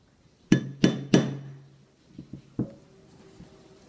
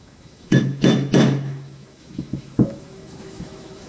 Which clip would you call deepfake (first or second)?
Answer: second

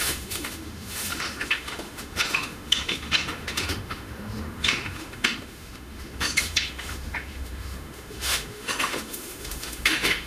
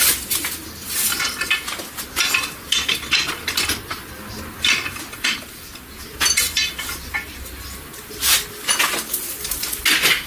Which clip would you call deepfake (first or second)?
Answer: first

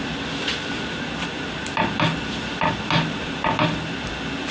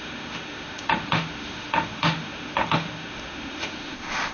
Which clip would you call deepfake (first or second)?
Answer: second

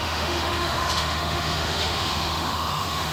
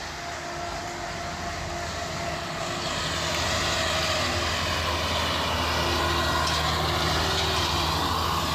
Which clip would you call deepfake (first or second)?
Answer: first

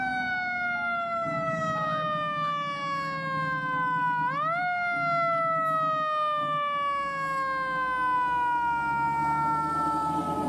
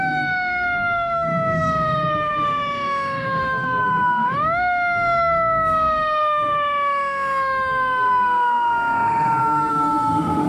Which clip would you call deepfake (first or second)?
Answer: second